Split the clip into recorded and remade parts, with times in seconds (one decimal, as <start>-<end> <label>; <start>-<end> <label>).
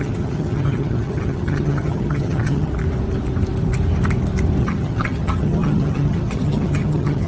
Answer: 0.0-2.7 remade; 2.7-4.6 recorded; 4.6-7.3 remade